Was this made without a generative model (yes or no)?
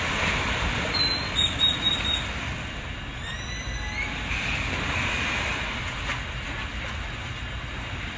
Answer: yes